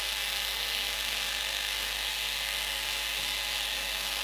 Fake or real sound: fake